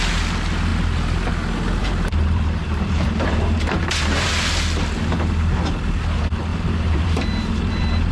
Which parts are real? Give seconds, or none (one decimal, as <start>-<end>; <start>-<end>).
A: 0.0-1.8; 4.3-6.5